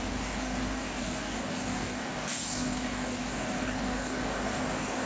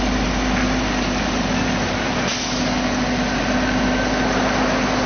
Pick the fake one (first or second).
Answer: first